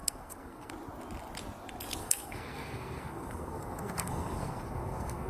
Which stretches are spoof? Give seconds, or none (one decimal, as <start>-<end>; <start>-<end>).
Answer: 0.0-0.7; 2.0-5.3